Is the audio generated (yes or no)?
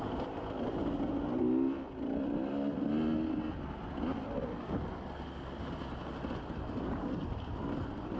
no